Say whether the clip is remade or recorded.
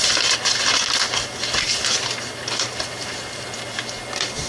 recorded